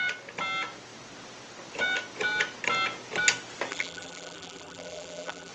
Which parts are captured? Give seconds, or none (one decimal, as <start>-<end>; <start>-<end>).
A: 0.0-3.7